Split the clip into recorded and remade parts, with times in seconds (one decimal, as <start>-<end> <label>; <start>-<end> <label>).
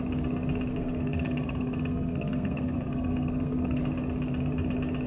0.0-0.7 recorded; 0.7-3.8 remade; 3.8-5.1 recorded